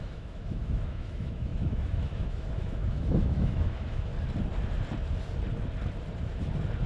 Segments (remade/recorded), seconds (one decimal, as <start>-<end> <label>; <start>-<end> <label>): 0.0-4.1 remade; 4.1-6.9 recorded